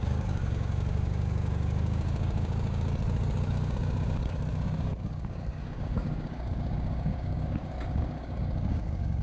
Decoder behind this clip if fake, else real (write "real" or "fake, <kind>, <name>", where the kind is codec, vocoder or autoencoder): fake, codec, DAC